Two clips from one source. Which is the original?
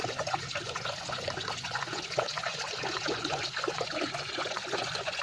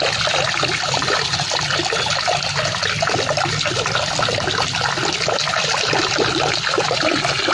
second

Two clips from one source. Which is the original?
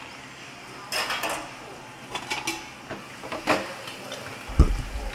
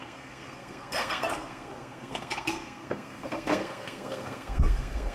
first